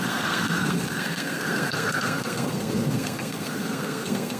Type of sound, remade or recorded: remade